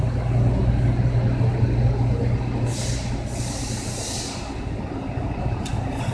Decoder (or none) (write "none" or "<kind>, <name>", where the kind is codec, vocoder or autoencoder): none